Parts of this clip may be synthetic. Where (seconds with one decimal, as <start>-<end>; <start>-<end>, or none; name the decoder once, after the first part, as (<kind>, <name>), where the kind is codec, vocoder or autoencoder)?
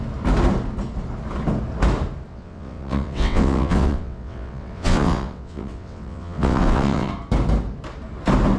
2.3-7.1 (vocoder, WaveNeXt)